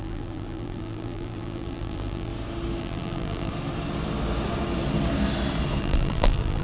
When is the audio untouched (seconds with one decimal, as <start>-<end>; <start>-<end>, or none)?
2.3-2.8; 3.5-5.8